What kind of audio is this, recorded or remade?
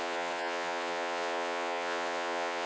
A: remade